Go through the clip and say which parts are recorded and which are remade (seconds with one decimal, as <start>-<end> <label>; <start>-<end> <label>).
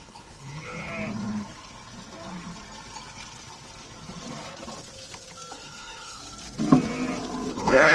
0.0-0.9 remade; 0.9-5.5 recorded; 5.5-6.2 remade; 6.2-7.5 recorded; 7.5-7.9 remade